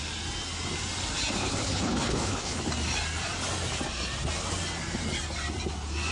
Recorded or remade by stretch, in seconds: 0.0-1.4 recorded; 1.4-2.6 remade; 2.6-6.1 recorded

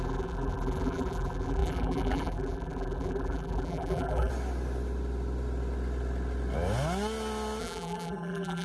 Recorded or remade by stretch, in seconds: 0.0-4.3 remade; 4.3-7.6 recorded; 7.6-8.6 remade